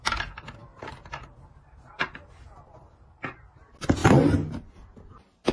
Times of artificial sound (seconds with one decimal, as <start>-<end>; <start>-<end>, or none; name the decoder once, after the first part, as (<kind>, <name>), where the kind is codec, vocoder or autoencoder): none